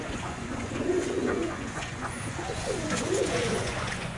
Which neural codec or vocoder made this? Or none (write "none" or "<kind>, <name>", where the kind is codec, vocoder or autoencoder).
vocoder, Vocos